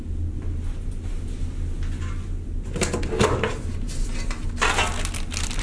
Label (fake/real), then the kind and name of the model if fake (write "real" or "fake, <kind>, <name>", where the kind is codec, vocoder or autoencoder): real